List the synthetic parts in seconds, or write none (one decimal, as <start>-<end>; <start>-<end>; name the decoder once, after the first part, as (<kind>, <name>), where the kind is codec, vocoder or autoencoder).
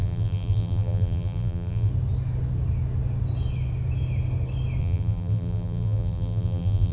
0.0-1.9 (vocoder, BigVGAN v2); 4.8-6.9